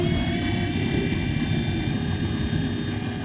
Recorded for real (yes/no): yes